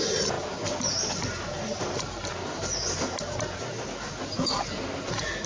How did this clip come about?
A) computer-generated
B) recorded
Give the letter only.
B